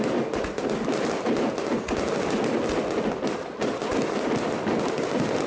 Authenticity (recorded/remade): recorded